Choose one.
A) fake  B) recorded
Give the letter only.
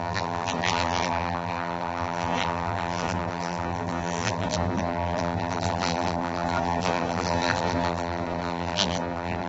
A